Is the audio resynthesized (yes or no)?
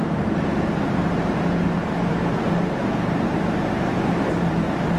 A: yes